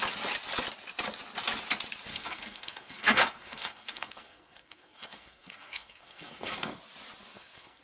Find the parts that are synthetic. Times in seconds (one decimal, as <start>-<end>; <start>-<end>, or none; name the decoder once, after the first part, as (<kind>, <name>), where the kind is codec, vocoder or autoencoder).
2.1-6.8 (codec, SNAC); 7.3-7.8